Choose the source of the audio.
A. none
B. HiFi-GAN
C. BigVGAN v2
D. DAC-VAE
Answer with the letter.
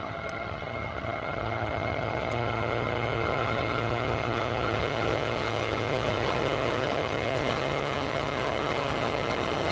B